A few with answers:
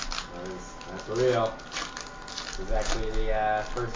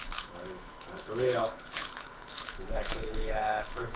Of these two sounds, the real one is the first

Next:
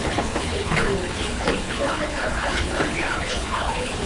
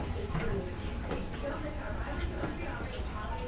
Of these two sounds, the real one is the second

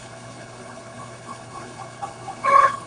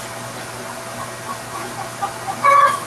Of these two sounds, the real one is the second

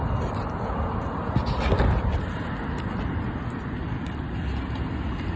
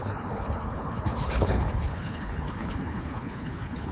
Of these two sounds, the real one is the first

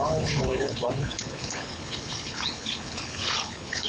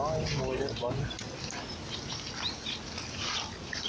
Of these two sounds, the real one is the second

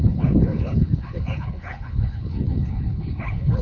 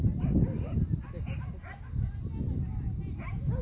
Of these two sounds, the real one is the second